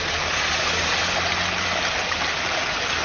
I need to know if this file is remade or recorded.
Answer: remade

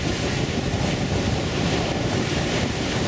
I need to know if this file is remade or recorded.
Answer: remade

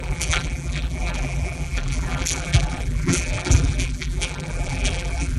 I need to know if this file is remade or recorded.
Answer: remade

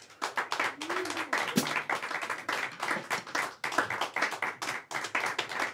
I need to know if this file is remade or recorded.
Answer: recorded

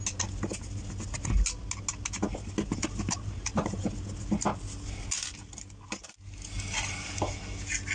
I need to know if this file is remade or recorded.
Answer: recorded